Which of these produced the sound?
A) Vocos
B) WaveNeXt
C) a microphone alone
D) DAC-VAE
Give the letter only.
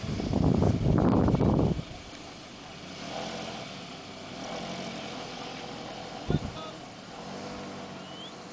C